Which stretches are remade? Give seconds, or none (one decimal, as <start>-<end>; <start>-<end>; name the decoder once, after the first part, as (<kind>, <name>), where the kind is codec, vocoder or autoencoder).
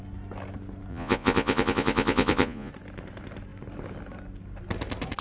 0.9-2.7 (vocoder, Vocos)